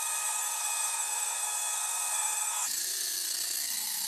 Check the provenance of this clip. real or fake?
fake